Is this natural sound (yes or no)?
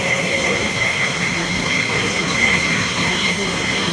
no